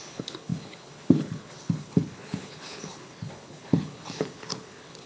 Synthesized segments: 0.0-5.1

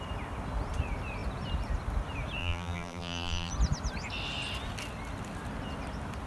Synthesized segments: 2.4-3.5